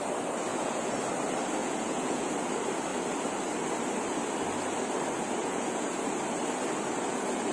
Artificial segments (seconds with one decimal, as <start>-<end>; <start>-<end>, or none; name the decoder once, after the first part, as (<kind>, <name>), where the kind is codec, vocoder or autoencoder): 0.5-1.0 (vocoder, Vocos); 1.6-2.3; 5.4-6.0